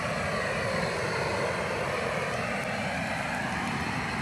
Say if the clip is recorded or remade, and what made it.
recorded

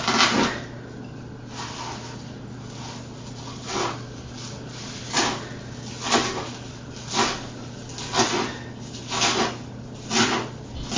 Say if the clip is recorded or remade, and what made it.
recorded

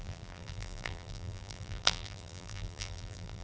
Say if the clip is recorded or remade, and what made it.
remade, vocoder, BigVGAN v2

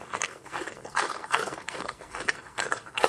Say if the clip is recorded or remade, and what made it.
remade, codec, SNAC